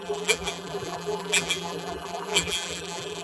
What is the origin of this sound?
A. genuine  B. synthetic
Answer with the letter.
B